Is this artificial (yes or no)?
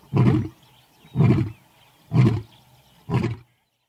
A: no